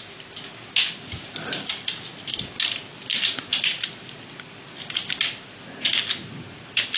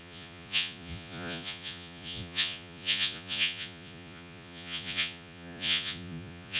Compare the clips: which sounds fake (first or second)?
second